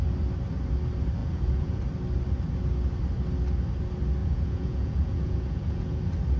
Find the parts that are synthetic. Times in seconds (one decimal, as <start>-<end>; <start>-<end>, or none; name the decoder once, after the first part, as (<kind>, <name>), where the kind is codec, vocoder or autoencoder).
1.2-1.8 (vocoder, Vocos); 4.2-6.0